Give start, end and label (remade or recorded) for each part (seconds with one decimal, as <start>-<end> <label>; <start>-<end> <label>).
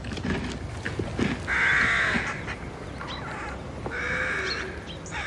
0.0-5.3 recorded